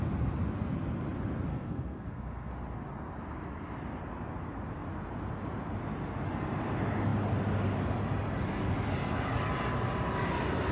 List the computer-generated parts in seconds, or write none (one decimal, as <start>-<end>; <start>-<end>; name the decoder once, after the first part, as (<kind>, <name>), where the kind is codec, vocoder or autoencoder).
1.5-2.5 (codec, SNAC)